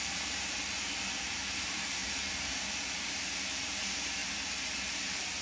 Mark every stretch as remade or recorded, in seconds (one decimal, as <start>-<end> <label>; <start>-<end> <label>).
0.0-4.2 remade; 4.2-4.8 recorded; 4.8-5.4 remade